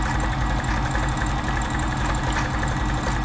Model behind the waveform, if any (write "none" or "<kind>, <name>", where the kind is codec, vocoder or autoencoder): none